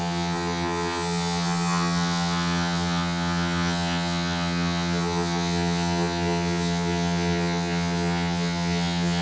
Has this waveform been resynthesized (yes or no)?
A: yes